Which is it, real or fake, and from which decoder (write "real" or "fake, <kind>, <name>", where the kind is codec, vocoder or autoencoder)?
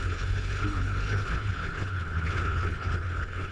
fake, codec, HILCodec